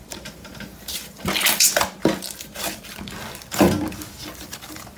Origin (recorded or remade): remade